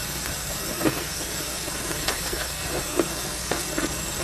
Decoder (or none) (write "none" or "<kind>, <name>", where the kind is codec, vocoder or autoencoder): codec, SNAC